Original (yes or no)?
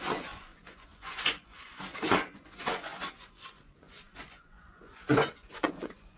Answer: no